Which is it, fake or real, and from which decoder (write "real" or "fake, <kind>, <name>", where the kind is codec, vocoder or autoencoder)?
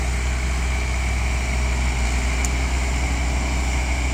real